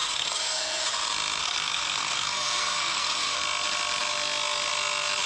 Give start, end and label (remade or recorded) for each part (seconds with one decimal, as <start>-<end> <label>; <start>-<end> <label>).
0.0-0.8 remade; 0.8-1.4 recorded; 1.4-3.4 remade; 3.4-5.3 recorded